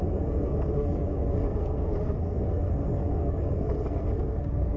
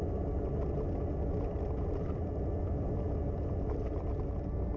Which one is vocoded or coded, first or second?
first